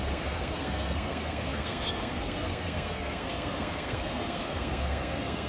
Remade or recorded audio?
remade